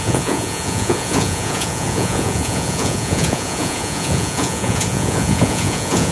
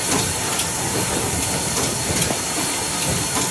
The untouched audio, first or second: second